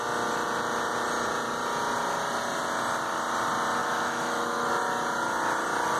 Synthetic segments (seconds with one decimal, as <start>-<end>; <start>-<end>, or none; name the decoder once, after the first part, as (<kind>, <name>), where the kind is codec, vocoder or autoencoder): 3.8-4.7 (autoencoder, DAC-VAE)